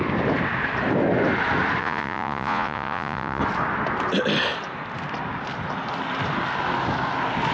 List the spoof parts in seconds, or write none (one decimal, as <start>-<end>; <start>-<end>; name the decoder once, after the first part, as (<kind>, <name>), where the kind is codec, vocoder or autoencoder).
1.8-3.4 (vocoder, Vocos)